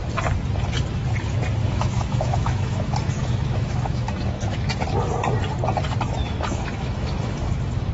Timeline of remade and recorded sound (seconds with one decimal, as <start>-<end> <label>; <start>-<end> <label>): 0.0-1.6 recorded; 1.6-4.7 remade; 4.7-6.2 recorded; 6.2-7.9 remade